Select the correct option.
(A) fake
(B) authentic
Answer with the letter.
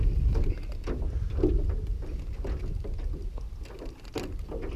B